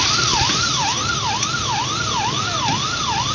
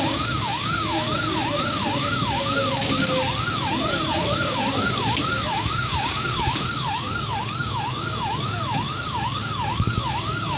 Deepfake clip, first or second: second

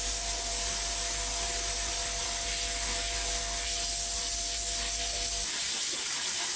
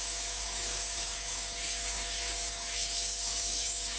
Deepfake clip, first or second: second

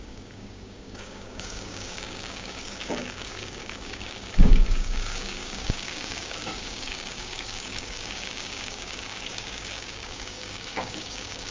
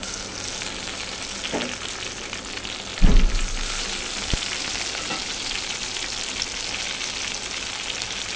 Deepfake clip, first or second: first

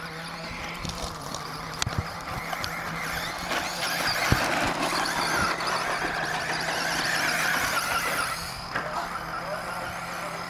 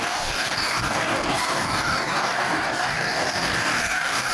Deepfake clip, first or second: second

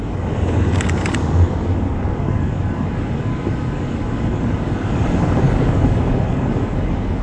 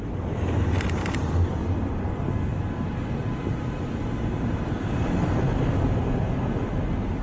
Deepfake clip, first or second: first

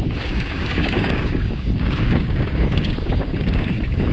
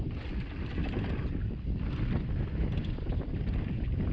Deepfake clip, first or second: first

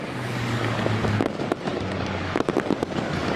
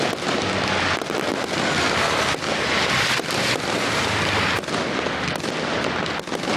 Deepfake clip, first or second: first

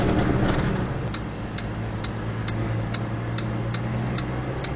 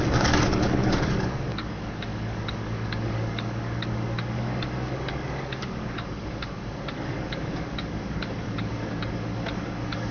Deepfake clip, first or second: second